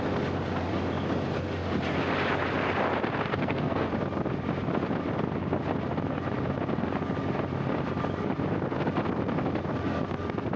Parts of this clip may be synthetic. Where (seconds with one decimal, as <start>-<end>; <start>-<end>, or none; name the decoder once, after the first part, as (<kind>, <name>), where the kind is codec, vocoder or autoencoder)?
3.3-3.9 (codec, SNAC)